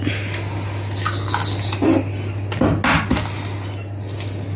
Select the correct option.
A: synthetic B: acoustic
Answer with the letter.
B